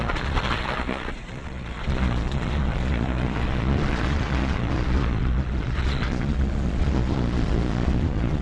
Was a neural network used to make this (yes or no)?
yes